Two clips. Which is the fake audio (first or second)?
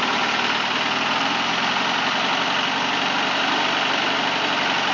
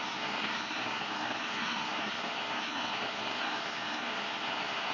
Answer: second